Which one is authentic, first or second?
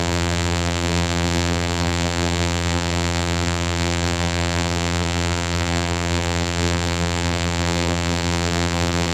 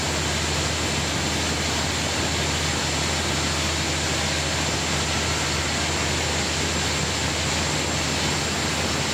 second